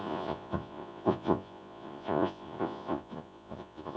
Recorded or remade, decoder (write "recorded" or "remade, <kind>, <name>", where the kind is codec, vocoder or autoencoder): remade, vocoder, Vocos